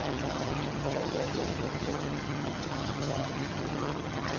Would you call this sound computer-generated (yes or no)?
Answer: yes